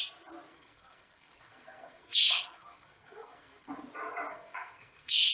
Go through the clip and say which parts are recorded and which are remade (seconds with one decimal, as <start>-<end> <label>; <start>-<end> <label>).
0.0-0.5 recorded; 0.5-3.7 remade; 3.7-4.3 recorded; 4.3-5.3 remade